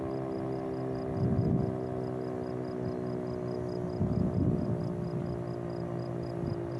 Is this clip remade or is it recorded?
recorded